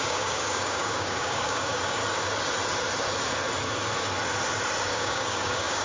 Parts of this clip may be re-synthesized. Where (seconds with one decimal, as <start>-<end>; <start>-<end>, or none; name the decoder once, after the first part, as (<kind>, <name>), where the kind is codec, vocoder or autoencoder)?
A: 0.0-2.0 (codec, DAC); 4.9-5.8